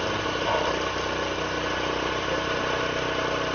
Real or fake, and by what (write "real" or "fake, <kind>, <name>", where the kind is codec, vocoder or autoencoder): real